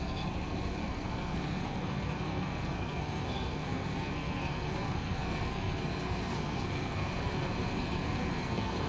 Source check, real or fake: fake